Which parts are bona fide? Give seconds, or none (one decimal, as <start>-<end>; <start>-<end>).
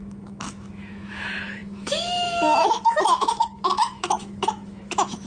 none